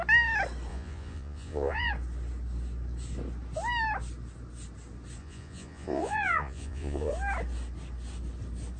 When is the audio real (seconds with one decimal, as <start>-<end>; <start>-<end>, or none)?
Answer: 0.0-0.7; 1.9-5.2; 7.1-8.8